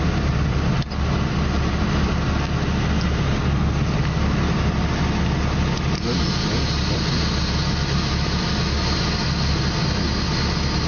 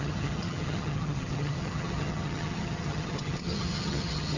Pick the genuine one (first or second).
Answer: first